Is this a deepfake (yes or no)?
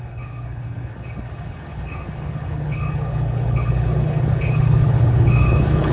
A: yes